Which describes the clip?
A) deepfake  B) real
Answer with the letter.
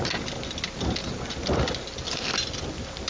B